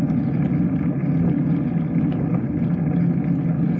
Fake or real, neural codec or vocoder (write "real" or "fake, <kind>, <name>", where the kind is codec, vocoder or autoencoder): real